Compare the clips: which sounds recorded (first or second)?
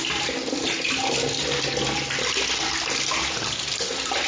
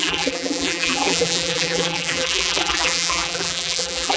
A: first